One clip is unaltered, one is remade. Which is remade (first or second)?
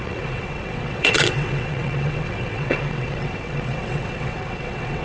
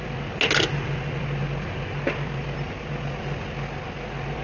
first